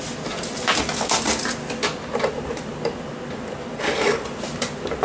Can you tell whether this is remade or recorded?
recorded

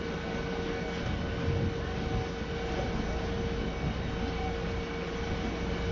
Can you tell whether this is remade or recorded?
recorded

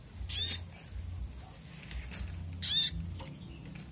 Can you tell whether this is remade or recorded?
recorded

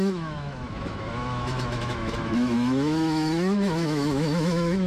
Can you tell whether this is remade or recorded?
remade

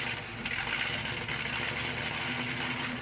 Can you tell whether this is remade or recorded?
recorded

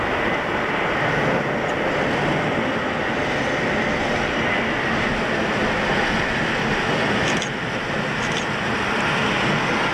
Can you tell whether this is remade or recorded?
recorded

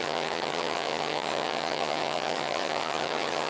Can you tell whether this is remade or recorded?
remade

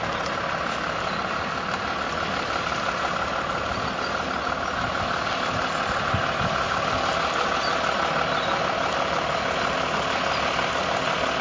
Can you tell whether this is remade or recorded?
recorded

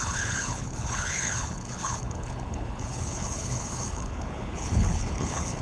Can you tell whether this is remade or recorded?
remade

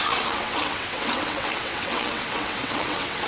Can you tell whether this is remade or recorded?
remade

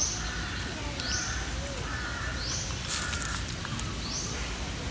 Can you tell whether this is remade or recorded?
recorded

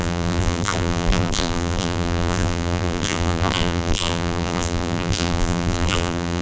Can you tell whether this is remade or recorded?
remade